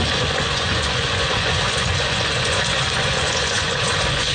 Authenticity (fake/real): fake